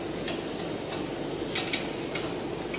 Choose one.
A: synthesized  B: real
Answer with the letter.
B